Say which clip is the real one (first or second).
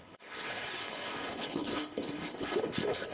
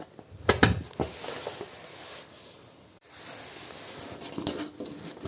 second